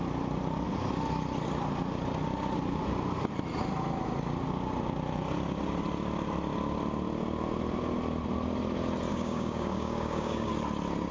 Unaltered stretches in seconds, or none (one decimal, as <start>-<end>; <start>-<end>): 0.0-9.1; 10.5-11.1